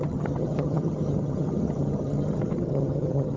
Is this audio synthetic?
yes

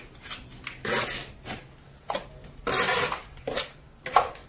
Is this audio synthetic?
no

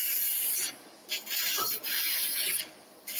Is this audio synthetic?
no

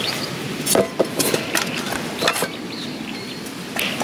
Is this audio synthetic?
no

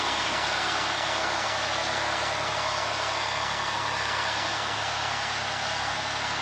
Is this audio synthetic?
yes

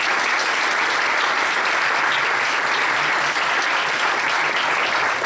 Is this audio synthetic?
no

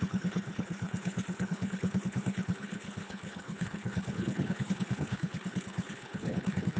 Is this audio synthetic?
yes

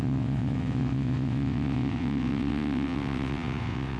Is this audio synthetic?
yes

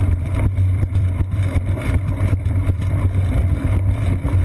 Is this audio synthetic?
yes